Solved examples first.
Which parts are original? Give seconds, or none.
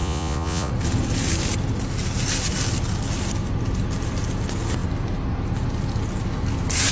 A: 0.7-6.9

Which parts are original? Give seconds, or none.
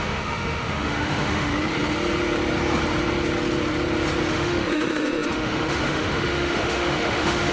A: 1.5-4.3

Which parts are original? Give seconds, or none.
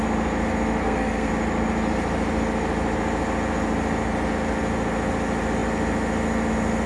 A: 0.0-0.8; 1.3-6.9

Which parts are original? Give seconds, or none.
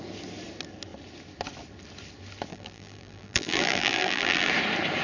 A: 0.0-2.5; 4.5-5.0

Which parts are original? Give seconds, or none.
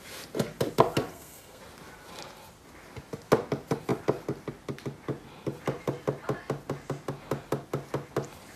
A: 0.0-1.1; 1.6-8.6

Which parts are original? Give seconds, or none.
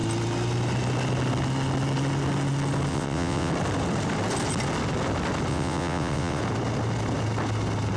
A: 0.0-2.9; 3.5-5.5; 6.4-8.0